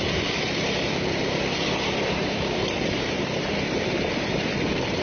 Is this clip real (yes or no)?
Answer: no